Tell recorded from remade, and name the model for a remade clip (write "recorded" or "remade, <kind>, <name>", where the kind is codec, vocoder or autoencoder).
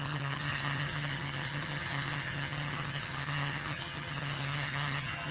remade, vocoder, HiFi-GAN